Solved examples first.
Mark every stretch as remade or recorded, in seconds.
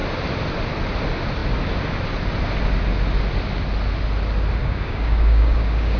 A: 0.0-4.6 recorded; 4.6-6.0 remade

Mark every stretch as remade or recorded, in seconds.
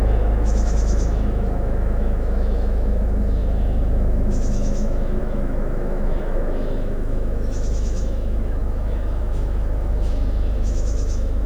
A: 0.0-11.5 remade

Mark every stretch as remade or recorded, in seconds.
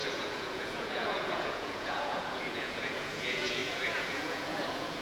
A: 0.0-5.0 remade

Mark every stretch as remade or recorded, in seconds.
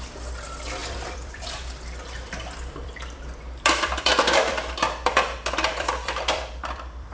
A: 0.0-0.8 recorded; 0.8-5.1 remade; 5.1-5.7 recorded; 5.7-7.1 remade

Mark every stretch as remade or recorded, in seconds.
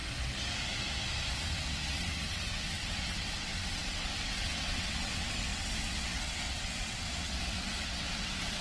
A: 0.0-1.3 recorded; 1.3-8.6 remade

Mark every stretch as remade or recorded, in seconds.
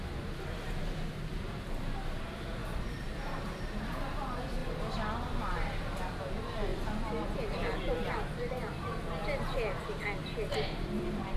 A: 0.0-4.6 remade; 4.6-6.2 recorded; 6.2-6.7 remade; 6.7-7.9 recorded; 7.9-9.2 remade; 9.2-10.5 recorded; 10.5-11.4 remade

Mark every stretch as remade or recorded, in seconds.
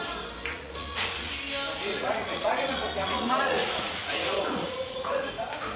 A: 0.0-0.5 recorded; 0.5-1.3 remade; 1.3-1.9 recorded; 1.9-5.3 remade; 5.3-5.8 recorded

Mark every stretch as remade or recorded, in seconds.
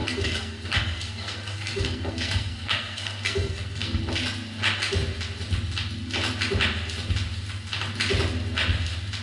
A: 0.0-4.0 remade; 4.0-9.2 recorded